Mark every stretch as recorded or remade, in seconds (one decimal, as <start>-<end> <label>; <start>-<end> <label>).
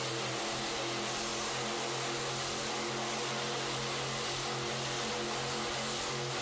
0.0-6.4 recorded